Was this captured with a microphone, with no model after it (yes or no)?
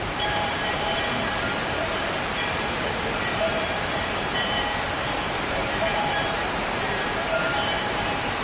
no